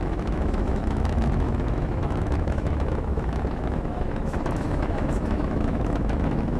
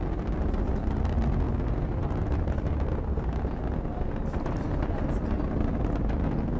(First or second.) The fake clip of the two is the first